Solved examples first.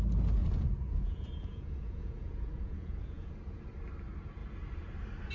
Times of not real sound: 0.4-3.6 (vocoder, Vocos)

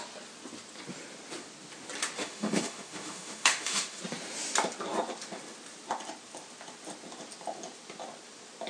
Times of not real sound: 2.2-4.0 (autoencoder, DAC-VAE)

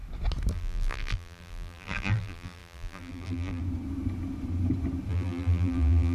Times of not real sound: 0.5-3.6 (vocoder, BigVGAN v2); 5.1-6.1

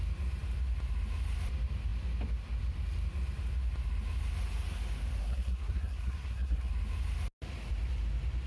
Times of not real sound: 5.2-6.7 (codec, SNAC)

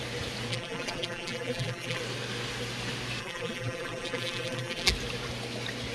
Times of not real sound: 0.5-2.0 (vocoder, BigVGAN v2); 3.2-4.9

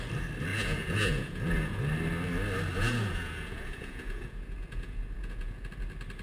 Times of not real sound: 0.5-1.8 (vocoder, Vocos); 2.7-5.7

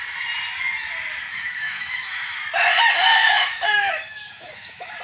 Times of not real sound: 1.3-2.4 (autoencoder, DAC-VAE); 3.2-5.0

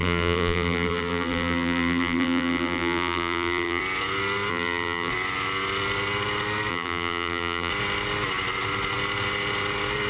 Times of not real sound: 0.0-3.8 (vocoder, BigVGAN v2); 4.5-5.1; 6.7-7.7